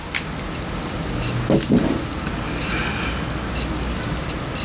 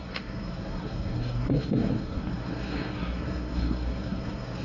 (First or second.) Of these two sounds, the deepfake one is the second